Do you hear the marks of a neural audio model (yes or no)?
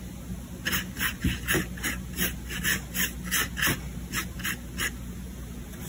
no